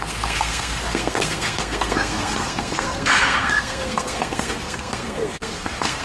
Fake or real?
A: fake